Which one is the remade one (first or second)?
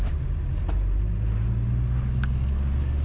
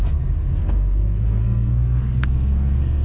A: second